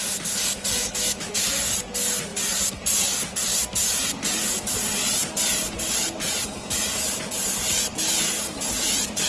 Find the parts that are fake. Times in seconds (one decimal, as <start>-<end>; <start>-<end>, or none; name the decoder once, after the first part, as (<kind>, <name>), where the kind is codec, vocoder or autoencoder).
0.8-1.6 (autoencoder, DAC-VAE)